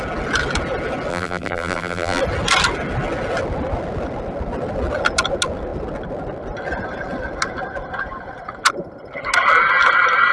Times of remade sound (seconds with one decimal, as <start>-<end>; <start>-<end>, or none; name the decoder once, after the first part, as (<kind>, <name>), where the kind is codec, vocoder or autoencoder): 1.1-2.2 (vocoder, BigVGAN v2)